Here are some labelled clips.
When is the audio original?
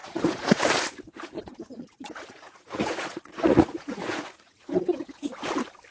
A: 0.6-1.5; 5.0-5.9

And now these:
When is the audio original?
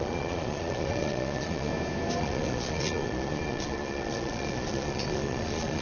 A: 1.7-2.2